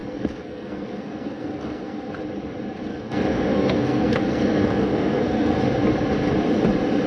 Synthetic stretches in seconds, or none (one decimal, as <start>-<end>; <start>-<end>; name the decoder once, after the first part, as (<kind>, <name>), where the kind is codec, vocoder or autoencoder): 0.0-2.1 (codec, SNAC); 2.9-5.6

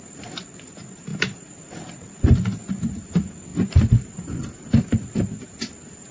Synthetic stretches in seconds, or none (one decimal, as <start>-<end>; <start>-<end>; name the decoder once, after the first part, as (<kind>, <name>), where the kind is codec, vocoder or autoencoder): none

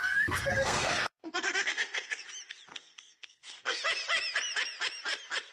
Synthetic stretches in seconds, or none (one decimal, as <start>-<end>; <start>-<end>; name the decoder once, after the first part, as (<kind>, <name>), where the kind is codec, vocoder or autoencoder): 0.0-2.2 (codec, SNAC); 2.7-3.8

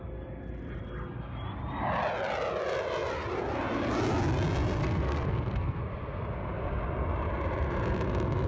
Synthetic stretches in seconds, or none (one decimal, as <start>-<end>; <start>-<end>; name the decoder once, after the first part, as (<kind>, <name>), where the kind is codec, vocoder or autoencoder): 4.8-5.8 (codec, SNAC)

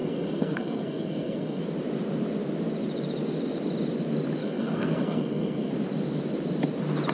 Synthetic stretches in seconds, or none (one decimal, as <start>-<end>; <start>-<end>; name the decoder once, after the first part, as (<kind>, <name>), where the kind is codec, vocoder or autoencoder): 0.0-1.6 (codec, SNAC); 4.4-5.7

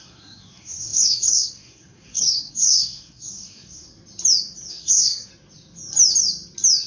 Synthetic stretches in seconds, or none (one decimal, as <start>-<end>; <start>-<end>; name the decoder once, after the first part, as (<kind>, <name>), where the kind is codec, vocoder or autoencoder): 0.0-3.9 (codec, SNAC); 4.7-5.3